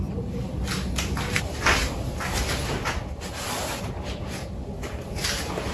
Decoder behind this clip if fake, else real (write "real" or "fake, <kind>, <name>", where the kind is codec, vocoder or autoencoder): real